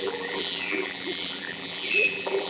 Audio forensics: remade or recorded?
remade